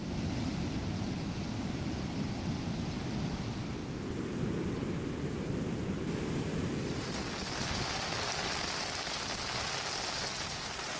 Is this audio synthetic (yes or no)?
no